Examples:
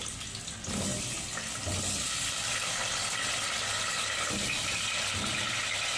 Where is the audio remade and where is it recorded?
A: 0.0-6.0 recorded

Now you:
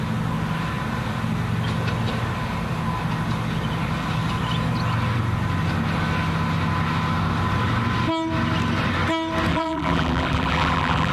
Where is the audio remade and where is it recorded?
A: 0.0-9.5 recorded; 9.5-11.1 remade

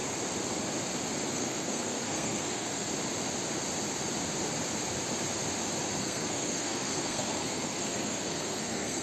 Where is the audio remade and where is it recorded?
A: 0.0-1.3 recorded; 1.3-2.9 remade; 2.9-6.0 recorded; 6.0-9.0 remade

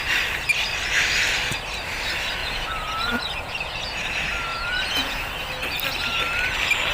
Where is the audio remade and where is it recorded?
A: 0.0-2.4 recorded; 2.4-3.8 remade; 3.8-4.5 recorded; 4.5-5.3 remade; 5.3-6.9 recorded

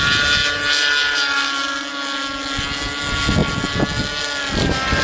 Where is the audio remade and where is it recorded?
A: 0.0-5.0 recorded

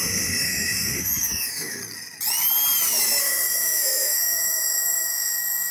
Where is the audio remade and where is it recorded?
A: 0.0-1.8 remade; 1.8-3.2 recorded; 3.2-5.7 remade